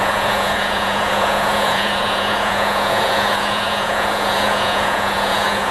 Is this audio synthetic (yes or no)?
yes